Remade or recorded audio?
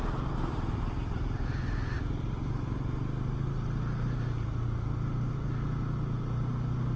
recorded